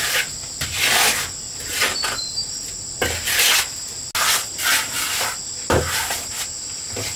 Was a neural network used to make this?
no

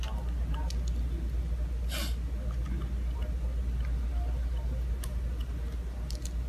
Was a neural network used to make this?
no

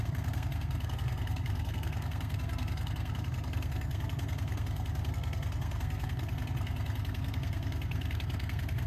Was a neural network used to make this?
yes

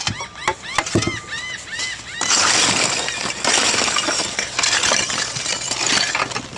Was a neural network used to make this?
no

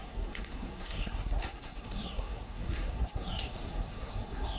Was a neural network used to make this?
yes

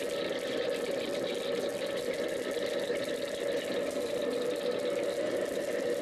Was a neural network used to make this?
no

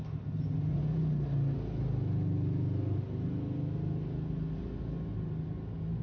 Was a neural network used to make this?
no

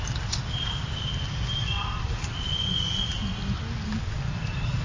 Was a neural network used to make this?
no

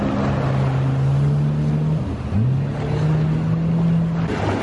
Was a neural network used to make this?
no